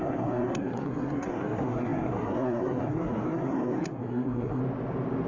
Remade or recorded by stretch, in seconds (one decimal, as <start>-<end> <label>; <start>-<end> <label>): 0.0-4.6 remade; 4.6-5.3 recorded